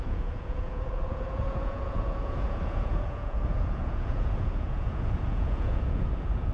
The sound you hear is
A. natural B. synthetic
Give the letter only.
B